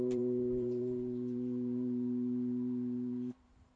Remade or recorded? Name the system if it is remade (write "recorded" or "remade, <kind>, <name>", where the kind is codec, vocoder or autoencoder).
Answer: remade, vocoder, BigVGAN v2